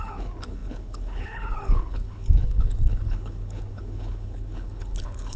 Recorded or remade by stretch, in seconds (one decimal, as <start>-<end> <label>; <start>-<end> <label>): 0.0-5.4 remade